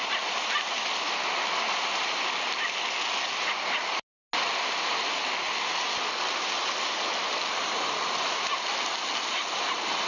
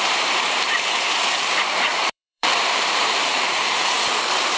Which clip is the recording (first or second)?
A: first